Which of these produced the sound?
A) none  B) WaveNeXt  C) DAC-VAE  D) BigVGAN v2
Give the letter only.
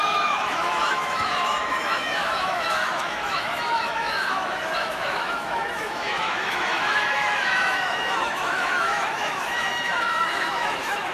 C